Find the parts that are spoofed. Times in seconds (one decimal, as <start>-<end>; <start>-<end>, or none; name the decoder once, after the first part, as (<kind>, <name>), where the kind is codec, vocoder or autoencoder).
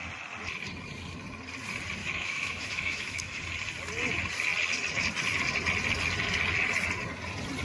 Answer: 2.0-3.4 (autoencoder, DAC-VAE)